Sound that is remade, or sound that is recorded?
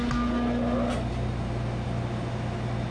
recorded